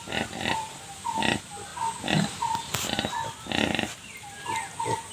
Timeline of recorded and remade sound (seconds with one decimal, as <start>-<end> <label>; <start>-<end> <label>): 0.0-5.1 recorded